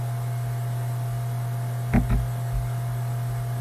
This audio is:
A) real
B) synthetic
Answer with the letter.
A